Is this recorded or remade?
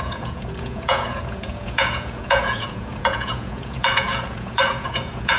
remade